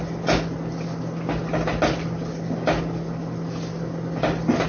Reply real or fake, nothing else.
real